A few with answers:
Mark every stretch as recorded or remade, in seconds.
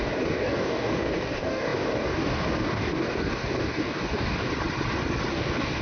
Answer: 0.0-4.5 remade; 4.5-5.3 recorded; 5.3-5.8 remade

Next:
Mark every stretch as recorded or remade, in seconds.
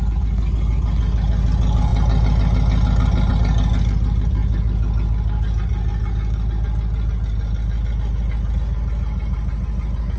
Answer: 0.0-10.2 recorded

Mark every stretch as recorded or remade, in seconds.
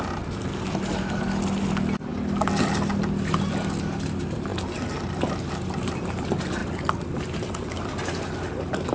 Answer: 0.0-8.9 recorded